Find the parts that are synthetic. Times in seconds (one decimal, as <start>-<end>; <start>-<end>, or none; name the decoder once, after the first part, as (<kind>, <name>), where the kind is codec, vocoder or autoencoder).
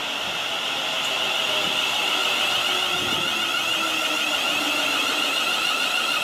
none